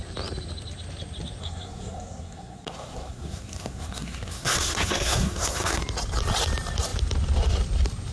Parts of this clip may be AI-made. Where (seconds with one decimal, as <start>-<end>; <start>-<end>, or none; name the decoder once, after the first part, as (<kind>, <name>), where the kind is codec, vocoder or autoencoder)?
1.4-5.8 (codec, SNAC)